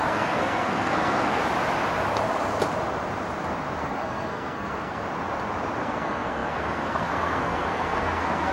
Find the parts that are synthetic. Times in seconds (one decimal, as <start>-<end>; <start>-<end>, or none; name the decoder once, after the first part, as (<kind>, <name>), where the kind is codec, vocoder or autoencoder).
0.0-1.4 (codec, SNAC); 3.8-5.0; 5.8-8.5